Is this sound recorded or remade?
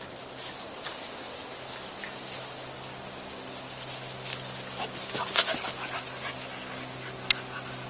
recorded